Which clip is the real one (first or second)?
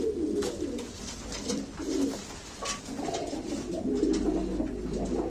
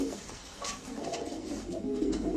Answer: first